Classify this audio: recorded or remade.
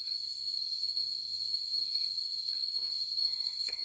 remade